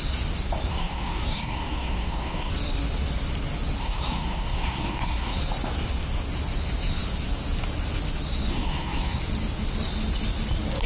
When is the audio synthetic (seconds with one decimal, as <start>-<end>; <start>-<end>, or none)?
0.7-2.5; 3.8-5.4; 8.5-9.2